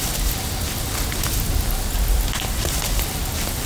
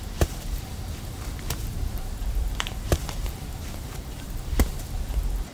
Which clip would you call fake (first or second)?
second